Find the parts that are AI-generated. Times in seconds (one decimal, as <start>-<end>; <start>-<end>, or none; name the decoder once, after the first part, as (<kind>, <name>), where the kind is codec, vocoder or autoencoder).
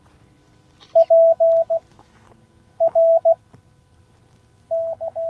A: 1.9-3.4 (autoencoder, DAC-VAE)